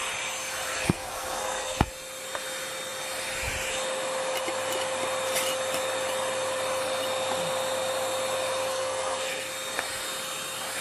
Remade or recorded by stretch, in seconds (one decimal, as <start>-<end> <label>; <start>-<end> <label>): 0.0-0.7 recorded; 0.7-1.9 remade; 1.9-8.7 recorded; 8.7-9.5 remade; 9.5-10.8 recorded